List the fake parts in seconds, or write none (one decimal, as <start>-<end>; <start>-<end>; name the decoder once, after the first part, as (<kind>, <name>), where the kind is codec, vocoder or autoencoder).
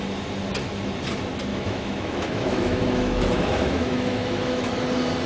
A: 1.5-4.7 (autoencoder, DAC-VAE)